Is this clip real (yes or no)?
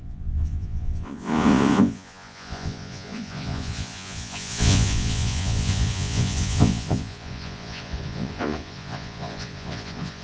no